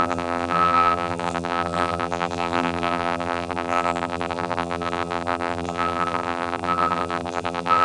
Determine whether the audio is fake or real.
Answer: fake